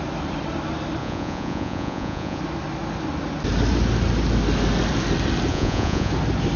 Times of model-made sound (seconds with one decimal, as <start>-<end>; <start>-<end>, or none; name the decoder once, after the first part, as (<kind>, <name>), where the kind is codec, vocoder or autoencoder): 1.0-2.4 (vocoder, Vocos); 5.5-6.1